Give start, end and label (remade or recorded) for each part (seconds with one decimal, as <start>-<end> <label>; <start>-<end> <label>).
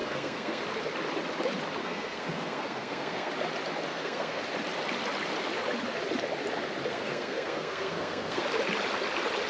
0.0-0.6 remade; 0.6-1.8 recorded; 1.8-3.3 remade; 3.3-3.9 recorded; 3.9-4.4 remade; 4.4-6.9 recorded; 6.9-8.4 remade; 8.4-9.5 recorded